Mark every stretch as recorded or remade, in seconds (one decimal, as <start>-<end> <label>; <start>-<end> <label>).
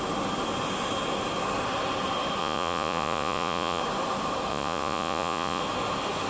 0.0-2.4 recorded; 2.4-3.8 remade; 3.8-4.5 recorded; 4.5-5.6 remade; 5.6-6.3 recorded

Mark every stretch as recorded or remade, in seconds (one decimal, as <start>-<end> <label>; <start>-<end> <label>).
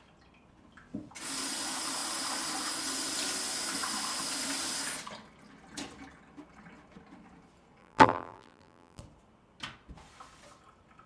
0.0-7.8 recorded; 7.8-9.0 remade; 9.0-11.1 recorded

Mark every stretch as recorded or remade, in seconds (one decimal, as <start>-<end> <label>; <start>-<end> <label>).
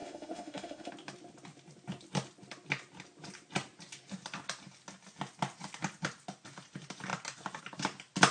0.0-0.9 remade; 0.9-8.3 recorded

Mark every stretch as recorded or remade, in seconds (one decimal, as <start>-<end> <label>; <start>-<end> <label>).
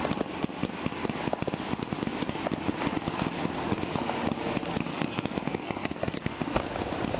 0.0-4.9 recorded; 4.9-6.4 remade; 6.4-7.2 recorded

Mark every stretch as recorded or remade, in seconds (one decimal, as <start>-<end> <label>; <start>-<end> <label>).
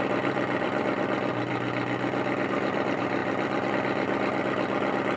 0.0-1.5 remade; 1.5-2.6 recorded; 2.6-5.2 remade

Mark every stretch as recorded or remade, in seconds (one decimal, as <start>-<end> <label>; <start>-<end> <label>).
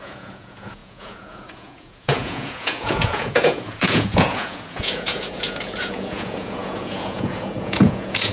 0.0-8.3 remade